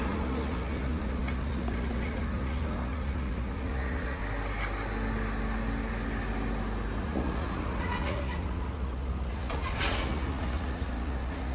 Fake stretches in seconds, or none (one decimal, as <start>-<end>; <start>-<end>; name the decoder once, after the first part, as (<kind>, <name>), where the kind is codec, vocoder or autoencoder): 0.0-4.2 (vocoder, Vocos); 7.0-11.5